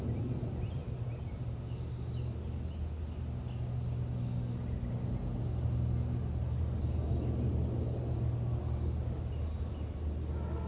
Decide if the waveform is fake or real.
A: real